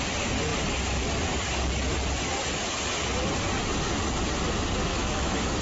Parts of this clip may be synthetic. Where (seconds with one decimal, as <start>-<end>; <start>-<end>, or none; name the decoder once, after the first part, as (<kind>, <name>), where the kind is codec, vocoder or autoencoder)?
4.9-5.6 (autoencoder, DAC-VAE)